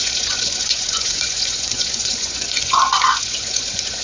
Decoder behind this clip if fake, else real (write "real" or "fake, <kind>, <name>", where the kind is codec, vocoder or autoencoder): fake, vocoder, Vocos